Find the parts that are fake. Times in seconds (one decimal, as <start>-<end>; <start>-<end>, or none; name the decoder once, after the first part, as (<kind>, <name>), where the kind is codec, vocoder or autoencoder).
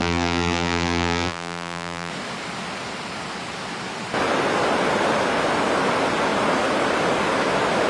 0.0-2.1 (vocoder, BigVGAN v2)